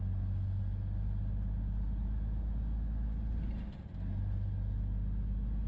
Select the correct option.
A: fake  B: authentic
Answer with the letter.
B